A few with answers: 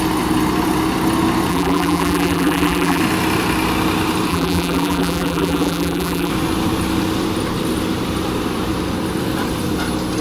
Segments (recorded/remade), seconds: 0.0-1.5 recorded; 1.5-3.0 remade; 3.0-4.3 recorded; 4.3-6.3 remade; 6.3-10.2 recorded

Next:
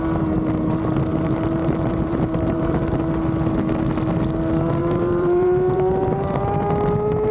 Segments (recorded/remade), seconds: 0.0-1.1 recorded; 1.1-3.0 remade; 3.0-4.8 recorded; 4.8-6.4 remade; 6.4-7.3 recorded

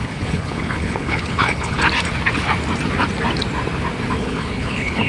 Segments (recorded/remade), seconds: 0.0-1.8 remade; 1.8-4.2 recorded; 4.2-5.1 remade